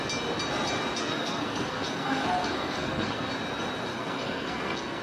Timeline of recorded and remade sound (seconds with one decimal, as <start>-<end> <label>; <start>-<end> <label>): 0.0-1.0 recorded; 1.0-3.3 remade; 3.3-3.9 recorded; 3.9-5.0 remade